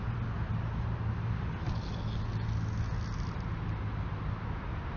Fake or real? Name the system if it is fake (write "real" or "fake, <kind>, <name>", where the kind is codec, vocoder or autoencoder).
real